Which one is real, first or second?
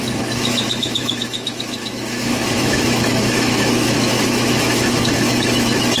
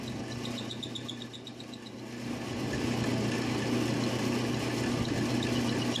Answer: second